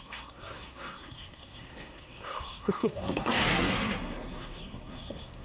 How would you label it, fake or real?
fake